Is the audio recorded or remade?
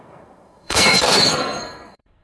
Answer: remade